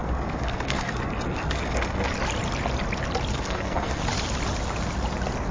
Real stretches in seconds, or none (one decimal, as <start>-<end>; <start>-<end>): 2.1-3.3; 4.0-5.5